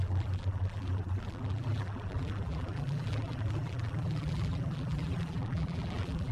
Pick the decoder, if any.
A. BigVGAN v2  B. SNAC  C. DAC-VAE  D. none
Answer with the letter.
A